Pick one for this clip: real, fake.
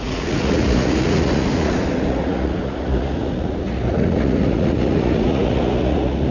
fake